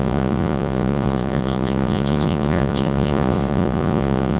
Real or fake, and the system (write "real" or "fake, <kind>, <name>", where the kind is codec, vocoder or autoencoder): fake, vocoder, Vocos